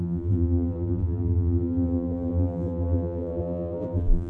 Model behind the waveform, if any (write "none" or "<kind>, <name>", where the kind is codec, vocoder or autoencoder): vocoder, BigVGAN v2